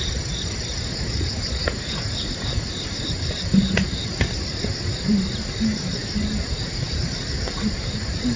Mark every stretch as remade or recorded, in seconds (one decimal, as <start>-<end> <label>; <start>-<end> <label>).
0.0-8.4 recorded